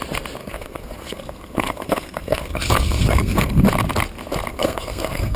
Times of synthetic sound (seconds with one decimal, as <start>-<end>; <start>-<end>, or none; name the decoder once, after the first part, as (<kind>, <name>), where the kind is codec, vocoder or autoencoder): 0.4-3.6 (codec, SNAC); 4.5-5.4